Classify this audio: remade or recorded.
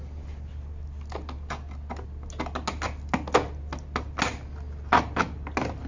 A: recorded